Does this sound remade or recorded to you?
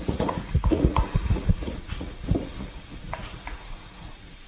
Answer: remade